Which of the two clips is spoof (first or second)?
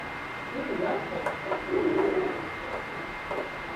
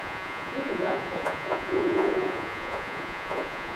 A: second